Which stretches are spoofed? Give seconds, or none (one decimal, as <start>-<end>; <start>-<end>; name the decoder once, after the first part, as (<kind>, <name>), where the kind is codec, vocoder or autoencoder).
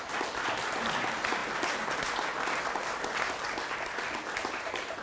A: none